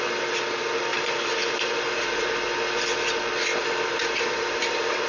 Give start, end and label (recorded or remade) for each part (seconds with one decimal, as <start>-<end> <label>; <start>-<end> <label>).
0.0-0.9 recorded; 0.9-2.3 remade; 2.3-3.5 recorded; 3.5-5.1 remade